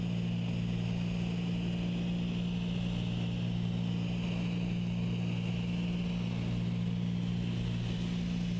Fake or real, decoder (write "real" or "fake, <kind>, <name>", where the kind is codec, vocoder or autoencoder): real